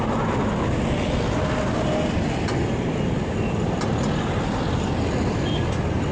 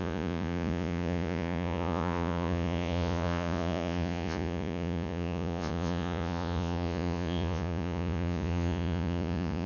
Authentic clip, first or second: first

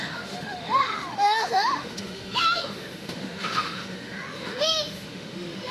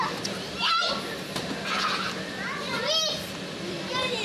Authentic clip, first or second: second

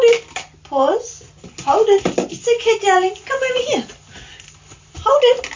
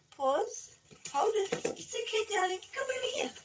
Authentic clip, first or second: first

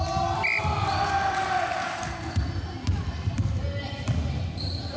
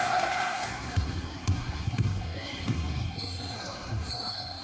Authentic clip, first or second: first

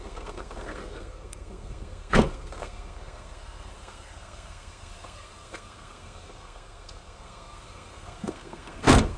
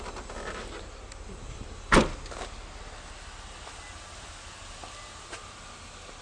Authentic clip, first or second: second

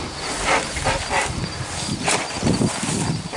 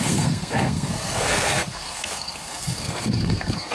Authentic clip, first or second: first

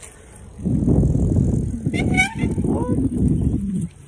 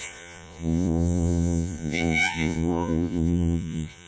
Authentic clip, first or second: first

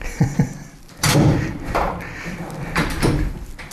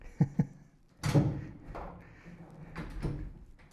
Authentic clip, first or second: second